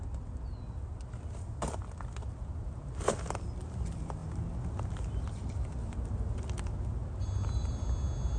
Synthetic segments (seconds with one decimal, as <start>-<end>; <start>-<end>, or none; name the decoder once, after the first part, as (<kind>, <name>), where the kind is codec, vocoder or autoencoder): none